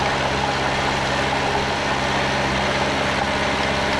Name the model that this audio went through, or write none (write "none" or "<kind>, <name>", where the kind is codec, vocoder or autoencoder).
none